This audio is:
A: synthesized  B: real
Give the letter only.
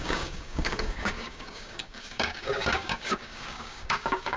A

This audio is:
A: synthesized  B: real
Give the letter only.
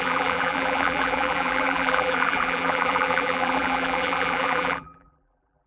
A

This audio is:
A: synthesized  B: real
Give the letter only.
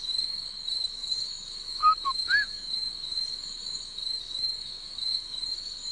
A